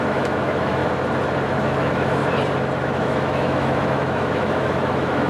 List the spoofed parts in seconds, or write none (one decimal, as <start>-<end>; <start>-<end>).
0.0-0.8; 1.4-2.2; 2.8-5.3